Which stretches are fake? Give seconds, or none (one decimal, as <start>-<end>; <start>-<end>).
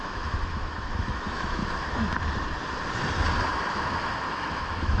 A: 0.0-1.6; 3.7-5.0